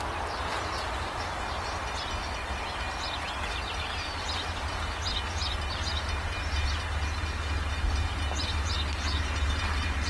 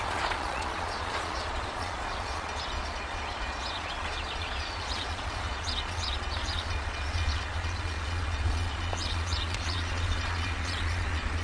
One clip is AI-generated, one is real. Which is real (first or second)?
first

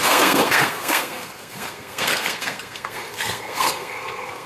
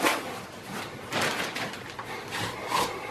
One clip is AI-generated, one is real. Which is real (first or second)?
second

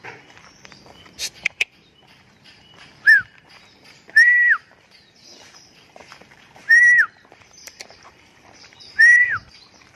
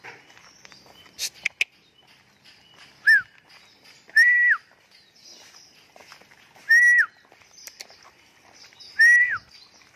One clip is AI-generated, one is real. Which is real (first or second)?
second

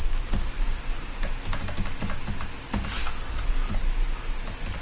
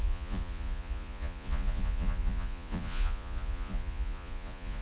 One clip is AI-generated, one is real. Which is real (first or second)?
first